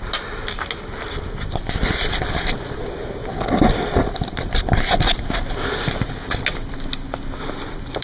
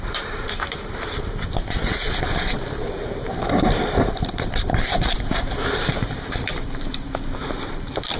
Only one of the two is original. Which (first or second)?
first